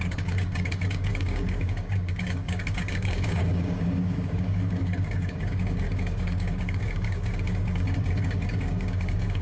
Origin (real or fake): fake